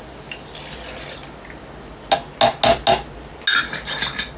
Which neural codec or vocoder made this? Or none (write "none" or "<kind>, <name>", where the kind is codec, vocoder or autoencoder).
none